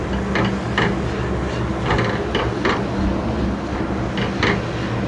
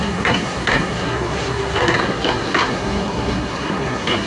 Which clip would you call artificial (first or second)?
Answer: second